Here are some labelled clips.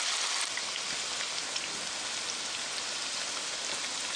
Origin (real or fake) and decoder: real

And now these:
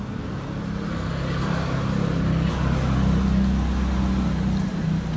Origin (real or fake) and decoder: real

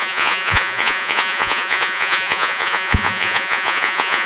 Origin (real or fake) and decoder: fake, vocoder, Vocos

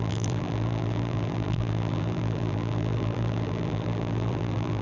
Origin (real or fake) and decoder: fake, vocoder, BigVGAN v2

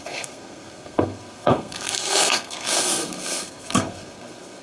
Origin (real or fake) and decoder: fake, codec, SNAC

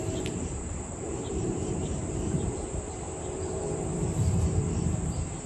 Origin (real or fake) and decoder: fake, vocoder, BigVGAN v2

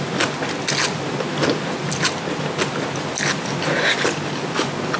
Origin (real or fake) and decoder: real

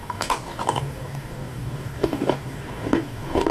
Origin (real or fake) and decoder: fake, codec, DAC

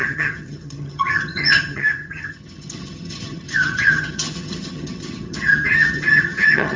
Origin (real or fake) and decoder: fake, vocoder, HiFi-GAN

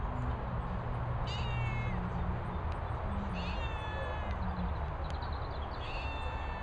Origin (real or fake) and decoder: real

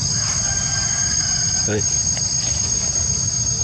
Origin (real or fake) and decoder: real